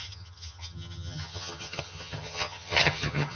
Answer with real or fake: fake